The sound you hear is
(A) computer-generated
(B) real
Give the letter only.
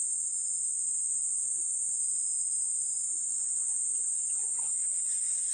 A